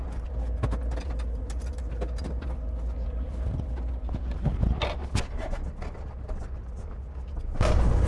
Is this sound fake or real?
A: real